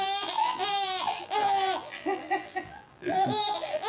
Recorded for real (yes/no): no